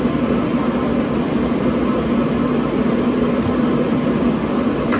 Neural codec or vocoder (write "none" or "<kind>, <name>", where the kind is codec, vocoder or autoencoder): none